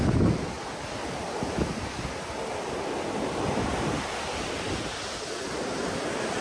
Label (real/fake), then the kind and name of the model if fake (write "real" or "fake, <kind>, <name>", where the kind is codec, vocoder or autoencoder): real